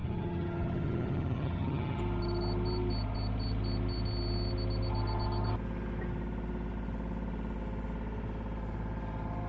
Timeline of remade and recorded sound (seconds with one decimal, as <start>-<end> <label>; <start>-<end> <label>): 0.0-2.0 remade; 2.0-9.5 recorded